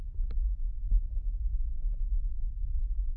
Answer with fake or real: real